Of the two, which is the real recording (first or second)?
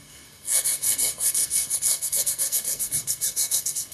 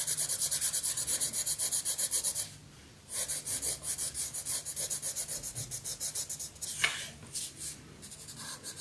second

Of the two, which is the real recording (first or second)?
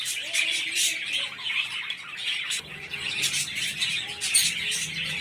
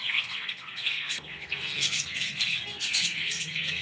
first